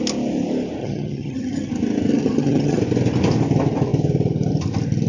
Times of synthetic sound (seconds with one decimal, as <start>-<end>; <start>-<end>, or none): 0.8-1.7; 2.1-2.8